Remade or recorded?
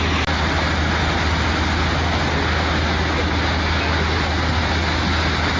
recorded